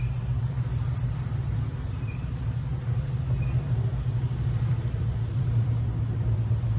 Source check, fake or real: fake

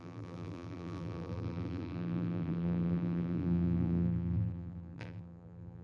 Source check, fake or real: fake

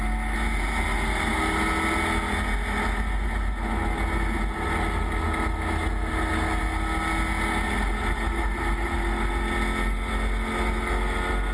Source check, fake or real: real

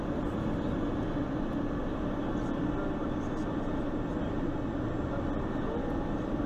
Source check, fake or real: real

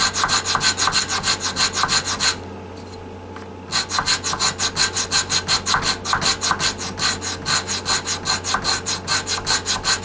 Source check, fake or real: real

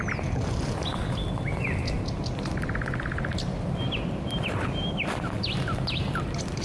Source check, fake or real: fake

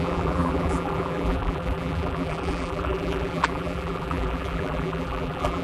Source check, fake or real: fake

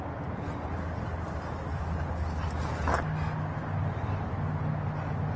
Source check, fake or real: real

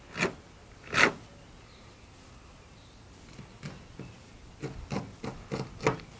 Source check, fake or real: real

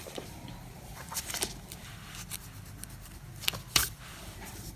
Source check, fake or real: fake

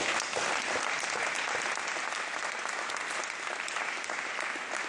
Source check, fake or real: real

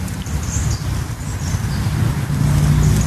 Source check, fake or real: real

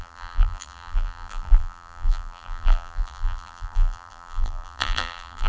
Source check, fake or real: fake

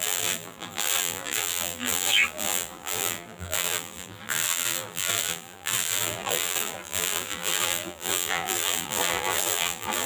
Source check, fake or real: fake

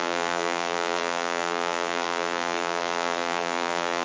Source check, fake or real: fake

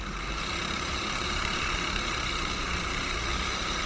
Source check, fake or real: fake